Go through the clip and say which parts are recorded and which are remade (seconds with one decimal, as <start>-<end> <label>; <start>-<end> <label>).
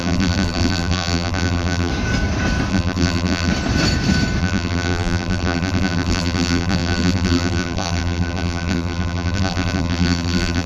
0.0-1.9 remade; 1.9-2.7 recorded; 2.7-3.5 remade; 3.5-4.4 recorded; 4.4-10.7 remade